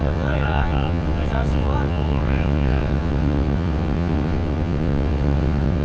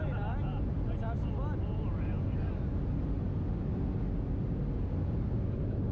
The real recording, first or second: second